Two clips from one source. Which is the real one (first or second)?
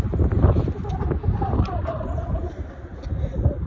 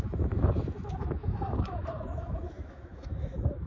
first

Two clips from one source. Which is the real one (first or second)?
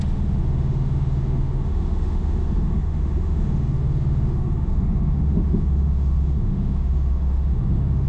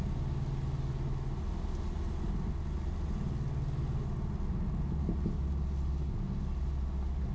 second